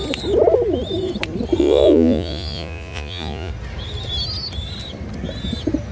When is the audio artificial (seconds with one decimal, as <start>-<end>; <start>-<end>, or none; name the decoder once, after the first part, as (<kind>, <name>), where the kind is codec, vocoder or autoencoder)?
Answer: 1.6-3.5 (vocoder, Vocos)